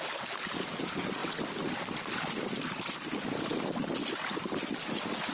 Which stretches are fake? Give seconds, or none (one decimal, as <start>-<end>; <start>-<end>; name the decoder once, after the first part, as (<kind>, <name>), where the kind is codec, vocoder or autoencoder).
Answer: none